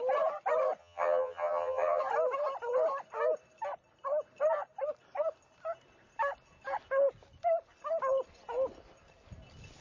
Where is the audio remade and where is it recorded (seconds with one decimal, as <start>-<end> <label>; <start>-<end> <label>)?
0.0-0.8 recorded; 0.8-2.0 remade; 2.0-9.8 recorded